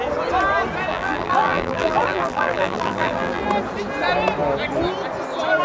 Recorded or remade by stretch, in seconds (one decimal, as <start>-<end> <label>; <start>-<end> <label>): 0.0-0.9 recorded; 0.9-3.4 remade; 3.4-5.6 recorded